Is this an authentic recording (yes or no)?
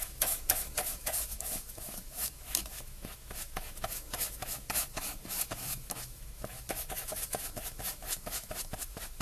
no